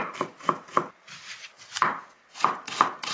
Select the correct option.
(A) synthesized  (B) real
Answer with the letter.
B